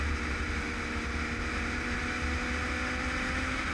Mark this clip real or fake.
real